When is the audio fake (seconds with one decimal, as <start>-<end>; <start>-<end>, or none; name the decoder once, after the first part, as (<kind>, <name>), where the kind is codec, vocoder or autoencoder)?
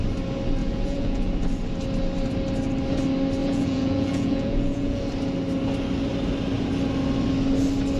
0.6-1.3 (vocoder, Vocos); 3.4-5.0